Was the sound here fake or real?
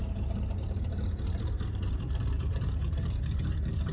fake